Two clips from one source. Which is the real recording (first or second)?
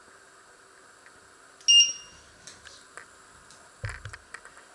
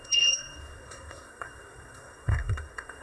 first